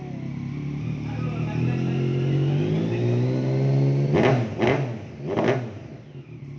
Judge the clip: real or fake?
real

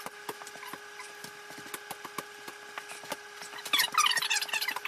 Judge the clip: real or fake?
real